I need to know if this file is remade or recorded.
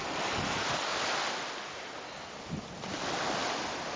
recorded